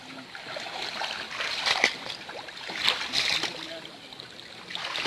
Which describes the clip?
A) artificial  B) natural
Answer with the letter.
A